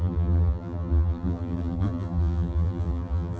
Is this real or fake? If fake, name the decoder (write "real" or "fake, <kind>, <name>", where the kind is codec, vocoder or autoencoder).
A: fake, vocoder, BigVGAN v2